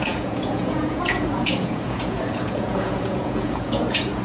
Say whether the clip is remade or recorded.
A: remade